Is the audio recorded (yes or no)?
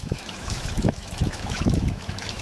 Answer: no